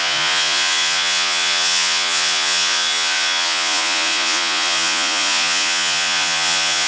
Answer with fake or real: fake